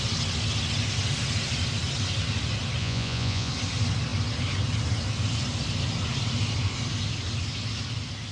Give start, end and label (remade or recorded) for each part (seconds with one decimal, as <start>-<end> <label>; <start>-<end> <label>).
0.0-2.8 recorded; 2.8-3.5 remade; 3.5-8.3 recorded

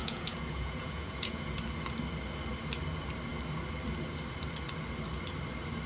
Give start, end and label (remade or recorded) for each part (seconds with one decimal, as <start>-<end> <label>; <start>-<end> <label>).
0.0-1.6 remade; 1.6-5.9 recorded

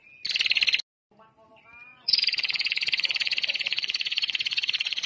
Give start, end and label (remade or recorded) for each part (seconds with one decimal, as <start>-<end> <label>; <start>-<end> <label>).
0.0-1.9 recorded; 1.9-5.1 remade

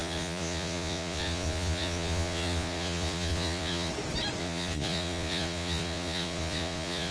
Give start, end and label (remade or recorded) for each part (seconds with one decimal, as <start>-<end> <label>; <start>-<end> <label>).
0.0-3.9 remade; 3.9-4.4 recorded; 4.4-7.1 remade

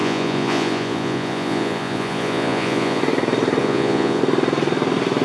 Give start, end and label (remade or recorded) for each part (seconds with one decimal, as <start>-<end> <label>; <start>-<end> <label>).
0.0-3.0 remade; 3.0-3.6 recorded; 3.6-4.2 remade; 4.2-5.2 recorded